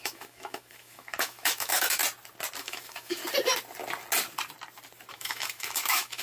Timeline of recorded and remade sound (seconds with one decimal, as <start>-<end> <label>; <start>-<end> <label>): 0.0-2.0 remade; 2.0-2.6 recorded; 2.6-3.2 remade; 3.2-5.1 recorded; 5.1-6.2 remade